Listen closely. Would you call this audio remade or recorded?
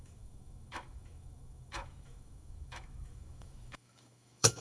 remade